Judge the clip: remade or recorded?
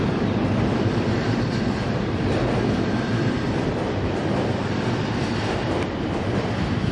recorded